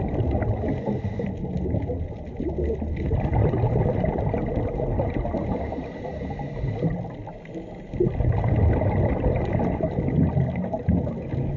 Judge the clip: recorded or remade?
recorded